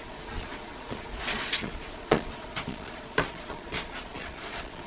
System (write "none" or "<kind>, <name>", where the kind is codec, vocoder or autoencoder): vocoder, Vocos